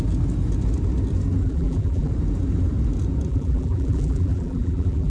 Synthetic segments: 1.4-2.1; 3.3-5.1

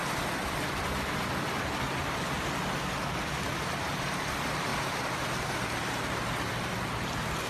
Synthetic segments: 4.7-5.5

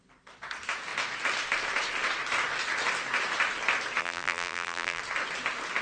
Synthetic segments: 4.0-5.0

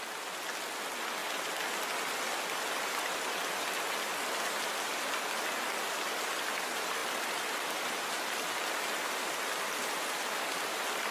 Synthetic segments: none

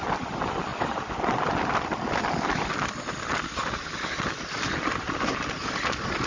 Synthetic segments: 0.7-3.0

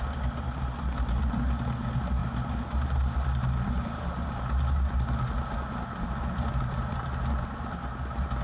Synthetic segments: none

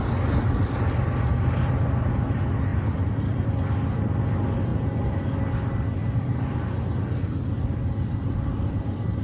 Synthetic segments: 2.7-3.5; 4.7-5.3; 6.0-6.7

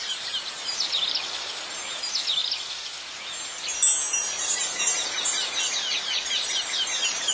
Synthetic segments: 0.0-2.4; 4.4-7.3